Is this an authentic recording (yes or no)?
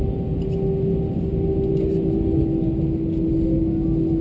yes